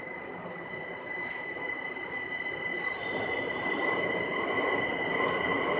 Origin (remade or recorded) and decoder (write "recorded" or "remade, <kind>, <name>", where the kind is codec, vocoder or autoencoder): recorded